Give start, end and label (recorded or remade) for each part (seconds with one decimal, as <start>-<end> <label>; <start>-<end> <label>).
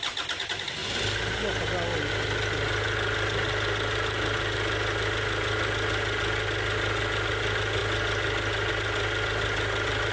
0.0-10.1 recorded